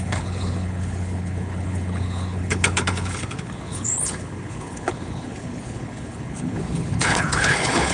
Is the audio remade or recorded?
remade